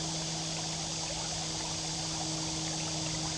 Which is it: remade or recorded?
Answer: recorded